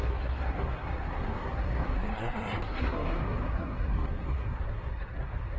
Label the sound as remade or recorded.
remade